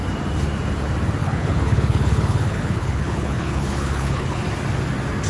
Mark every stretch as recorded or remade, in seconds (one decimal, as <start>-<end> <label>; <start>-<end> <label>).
0.0-1.2 recorded; 1.2-4.4 remade; 4.4-5.3 recorded